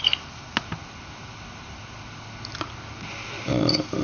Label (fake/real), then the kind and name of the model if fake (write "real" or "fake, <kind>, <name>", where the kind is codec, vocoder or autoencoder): real